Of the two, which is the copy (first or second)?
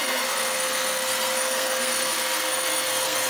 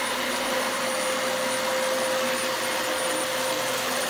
first